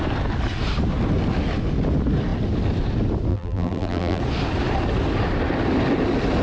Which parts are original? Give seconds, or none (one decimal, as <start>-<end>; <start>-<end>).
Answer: 0.0-3.3; 4.2-6.4